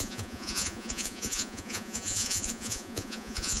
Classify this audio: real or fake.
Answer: fake